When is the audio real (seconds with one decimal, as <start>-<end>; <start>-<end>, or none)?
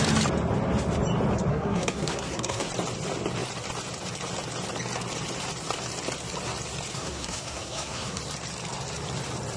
0.0-1.5; 2.7-6.9; 8.2-9.6